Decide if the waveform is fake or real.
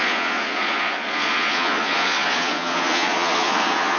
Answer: fake